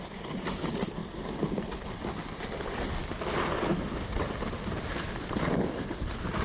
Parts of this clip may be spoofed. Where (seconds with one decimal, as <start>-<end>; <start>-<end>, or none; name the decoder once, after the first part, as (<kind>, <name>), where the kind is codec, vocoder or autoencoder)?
none